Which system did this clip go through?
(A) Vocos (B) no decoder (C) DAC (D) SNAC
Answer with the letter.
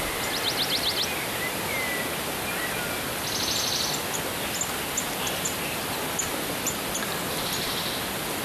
B